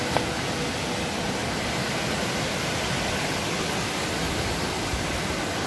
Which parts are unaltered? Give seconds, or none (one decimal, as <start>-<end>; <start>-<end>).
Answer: 0.0-5.7